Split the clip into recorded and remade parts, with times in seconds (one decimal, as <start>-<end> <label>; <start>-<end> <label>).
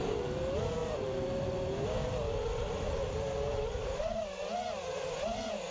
0.0-5.7 recorded